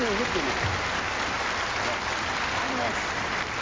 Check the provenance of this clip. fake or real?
real